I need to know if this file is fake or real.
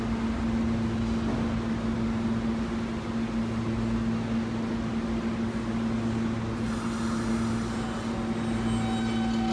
real